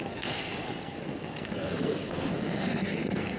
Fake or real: fake